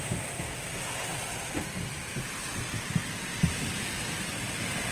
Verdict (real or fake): real